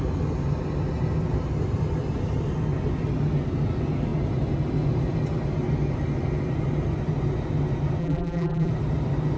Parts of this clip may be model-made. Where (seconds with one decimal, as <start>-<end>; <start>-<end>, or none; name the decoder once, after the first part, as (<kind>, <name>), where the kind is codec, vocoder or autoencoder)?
8.0-8.7 (vocoder, BigVGAN v2)